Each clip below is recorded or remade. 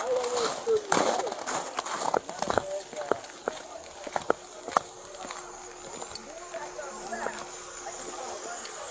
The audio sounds recorded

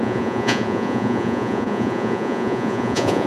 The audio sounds remade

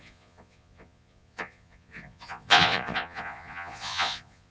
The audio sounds remade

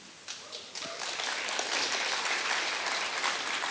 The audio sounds recorded